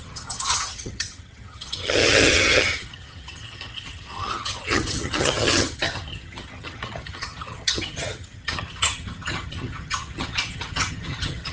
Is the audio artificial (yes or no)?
yes